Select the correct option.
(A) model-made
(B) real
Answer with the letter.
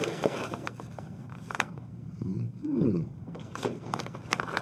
A